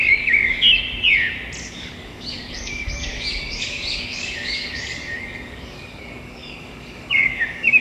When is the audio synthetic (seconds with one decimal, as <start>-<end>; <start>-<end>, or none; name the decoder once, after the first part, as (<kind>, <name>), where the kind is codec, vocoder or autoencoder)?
0.0-0.7 (codec, DAC); 1.6-7.8

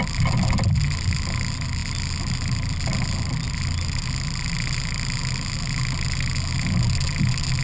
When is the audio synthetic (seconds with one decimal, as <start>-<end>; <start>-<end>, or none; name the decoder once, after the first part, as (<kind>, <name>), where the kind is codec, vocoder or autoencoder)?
none

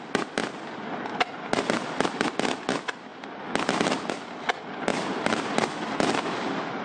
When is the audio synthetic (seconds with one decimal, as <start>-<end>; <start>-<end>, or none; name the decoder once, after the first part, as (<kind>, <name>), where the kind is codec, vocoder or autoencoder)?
none